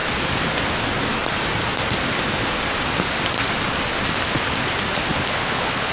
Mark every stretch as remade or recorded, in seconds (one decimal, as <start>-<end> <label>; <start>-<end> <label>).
0.0-5.1 recorded; 5.1-5.9 remade